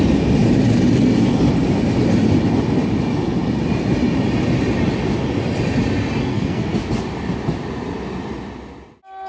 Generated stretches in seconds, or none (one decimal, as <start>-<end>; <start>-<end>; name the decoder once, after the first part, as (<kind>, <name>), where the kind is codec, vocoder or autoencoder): 6.3-6.8 (codec, SNAC)